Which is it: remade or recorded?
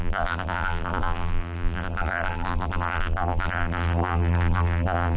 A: remade